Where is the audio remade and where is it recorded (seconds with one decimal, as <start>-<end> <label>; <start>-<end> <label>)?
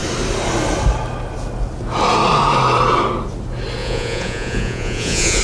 0.0-3.8 recorded; 3.8-5.4 remade